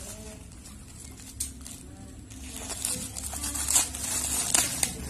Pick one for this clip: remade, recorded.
recorded